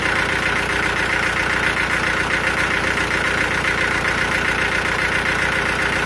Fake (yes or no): no